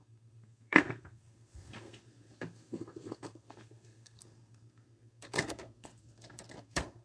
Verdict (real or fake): fake